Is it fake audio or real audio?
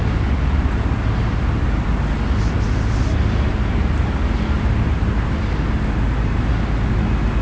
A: real